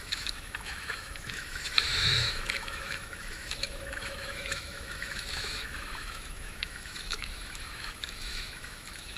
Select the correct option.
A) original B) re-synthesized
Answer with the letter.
B